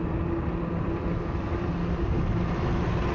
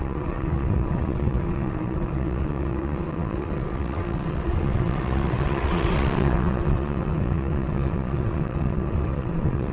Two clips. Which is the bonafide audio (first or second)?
first